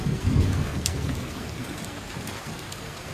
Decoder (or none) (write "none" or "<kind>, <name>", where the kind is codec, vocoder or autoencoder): codec, SNAC